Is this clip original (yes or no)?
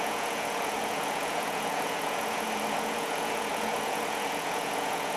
no